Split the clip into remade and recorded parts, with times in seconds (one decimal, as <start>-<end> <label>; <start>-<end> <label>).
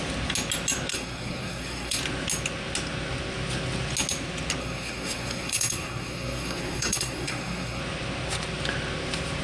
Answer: 0.0-0.9 recorded; 0.9-2.0 remade; 2.0-4.6 recorded; 4.6-7.8 remade; 7.8-9.4 recorded